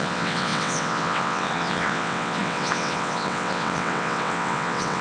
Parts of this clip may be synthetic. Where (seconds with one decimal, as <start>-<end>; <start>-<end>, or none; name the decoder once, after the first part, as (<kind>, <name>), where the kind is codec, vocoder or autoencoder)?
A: 0.0-5.0 (vocoder, WaveNeXt)